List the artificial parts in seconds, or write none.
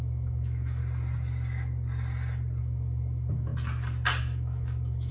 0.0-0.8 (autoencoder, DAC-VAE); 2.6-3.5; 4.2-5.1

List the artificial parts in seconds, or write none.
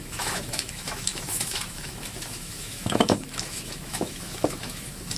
0.0-5.2 (autoencoder, DAC-VAE)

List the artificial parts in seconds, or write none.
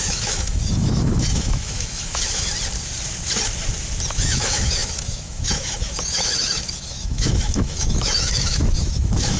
0.0-2.5 (autoencoder, DAC-VAE); 4.1-9.4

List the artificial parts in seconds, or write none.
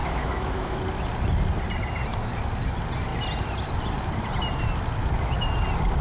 0.0-0.8 (autoencoder, DAC-VAE)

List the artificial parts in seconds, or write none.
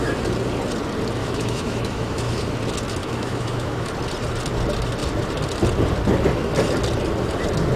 1.2-2.4 (autoencoder, DAC-VAE); 3.0-3.9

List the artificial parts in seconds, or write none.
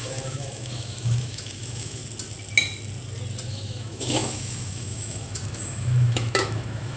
0.0-2.0 (autoencoder, DAC-VAE); 3.5-7.0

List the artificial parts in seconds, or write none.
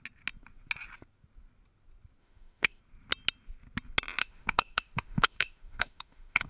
2.2-2.8 (autoencoder, DAC-VAE); 4.2-6.5